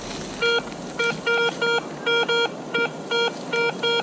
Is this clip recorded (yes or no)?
yes